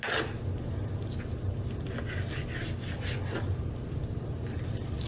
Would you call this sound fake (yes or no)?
no